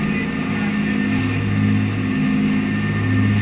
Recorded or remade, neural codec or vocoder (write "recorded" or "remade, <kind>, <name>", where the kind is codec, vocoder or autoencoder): recorded